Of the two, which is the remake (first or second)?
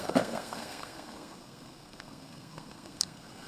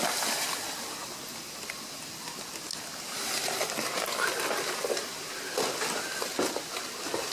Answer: first